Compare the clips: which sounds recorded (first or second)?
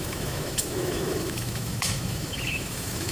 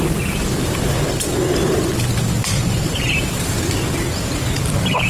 second